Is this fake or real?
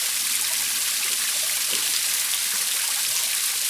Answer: real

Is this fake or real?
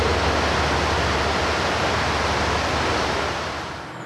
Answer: real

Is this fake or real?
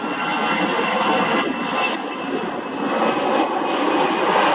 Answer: real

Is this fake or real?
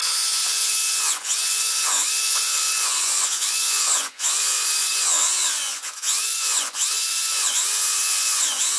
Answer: fake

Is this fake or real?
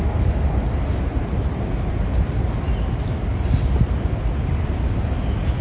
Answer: real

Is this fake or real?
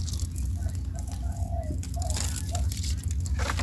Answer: real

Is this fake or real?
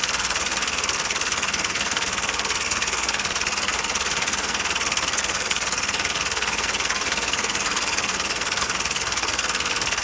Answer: fake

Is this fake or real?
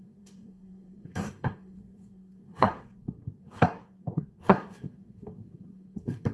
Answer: fake